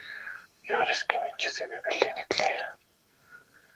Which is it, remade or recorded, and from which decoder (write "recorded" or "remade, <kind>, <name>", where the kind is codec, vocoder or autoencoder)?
remade, codec, SNAC